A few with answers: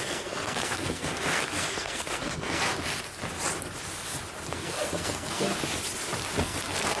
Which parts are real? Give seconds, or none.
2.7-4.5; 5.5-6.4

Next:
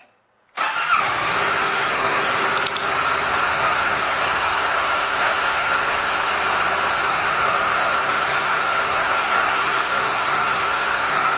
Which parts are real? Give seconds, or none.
0.0-1.6; 2.5-3.3; 6.3-6.9

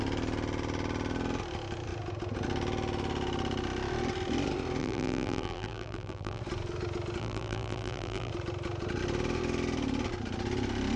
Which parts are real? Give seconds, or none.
0.0-4.8; 6.4-7.2; 8.3-11.0